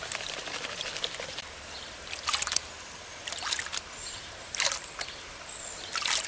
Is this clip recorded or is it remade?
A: recorded